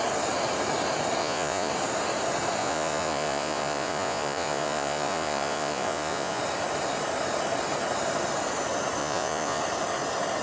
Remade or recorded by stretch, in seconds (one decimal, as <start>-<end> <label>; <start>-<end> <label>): 0.0-1.2 recorded; 1.2-1.7 remade; 1.7-2.6 recorded; 2.6-6.4 remade; 6.4-9.0 recorded; 9.0-9.6 remade; 9.6-10.4 recorded